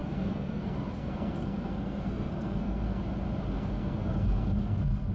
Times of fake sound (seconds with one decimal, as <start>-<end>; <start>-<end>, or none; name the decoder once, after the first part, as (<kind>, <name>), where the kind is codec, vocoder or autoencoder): 0.0-3.0 (codec, SNAC); 3.5-5.1